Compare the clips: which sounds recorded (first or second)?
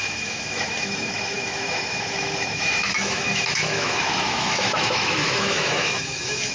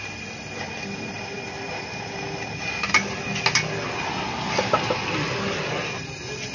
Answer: second